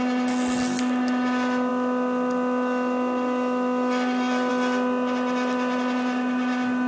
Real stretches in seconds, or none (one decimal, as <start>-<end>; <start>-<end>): 0.0-6.9

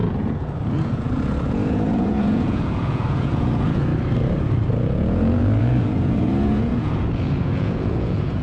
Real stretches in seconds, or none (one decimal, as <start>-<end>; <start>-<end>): 3.9-4.7

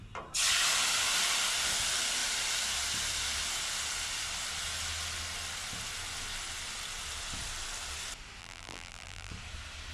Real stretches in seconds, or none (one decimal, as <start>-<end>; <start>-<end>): 0.0-8.4; 9.3-9.9